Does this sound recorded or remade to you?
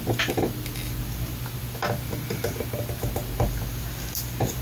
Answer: recorded